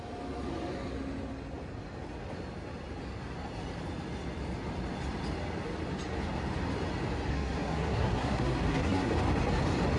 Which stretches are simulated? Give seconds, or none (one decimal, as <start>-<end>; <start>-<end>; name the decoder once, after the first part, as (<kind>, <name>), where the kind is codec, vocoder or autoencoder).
7.3-9.1 (codec, SNAC)